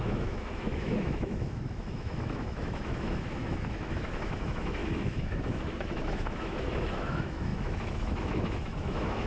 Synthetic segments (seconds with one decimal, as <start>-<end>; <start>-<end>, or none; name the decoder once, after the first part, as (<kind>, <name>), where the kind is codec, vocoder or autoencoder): 0.0-9.3 (autoencoder, DAC-VAE)